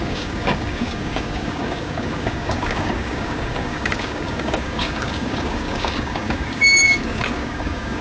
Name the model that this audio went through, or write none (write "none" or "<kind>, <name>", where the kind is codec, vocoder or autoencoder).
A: codec, DAC